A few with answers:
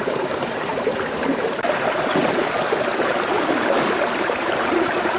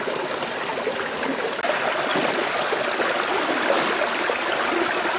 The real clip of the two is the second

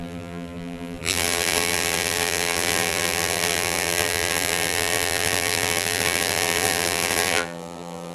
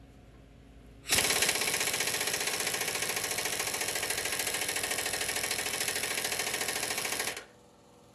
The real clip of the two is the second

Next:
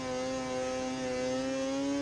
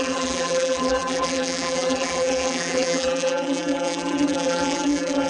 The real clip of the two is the first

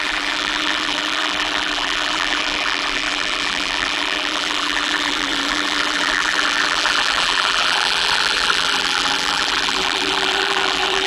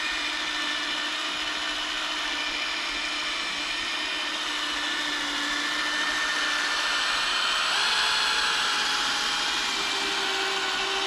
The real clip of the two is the second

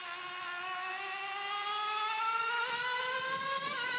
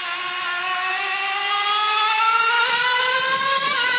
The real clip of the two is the first